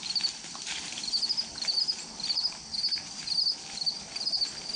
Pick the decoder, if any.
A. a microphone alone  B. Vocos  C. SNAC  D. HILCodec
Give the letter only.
A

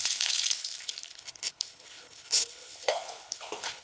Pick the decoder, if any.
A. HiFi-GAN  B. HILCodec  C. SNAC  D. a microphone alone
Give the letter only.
B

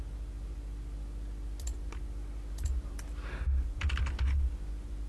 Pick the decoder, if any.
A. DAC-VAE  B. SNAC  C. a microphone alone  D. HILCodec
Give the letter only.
C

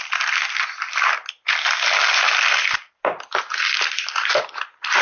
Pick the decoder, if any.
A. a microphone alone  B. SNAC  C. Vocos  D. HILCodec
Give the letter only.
A